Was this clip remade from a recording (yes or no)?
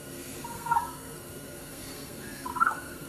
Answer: yes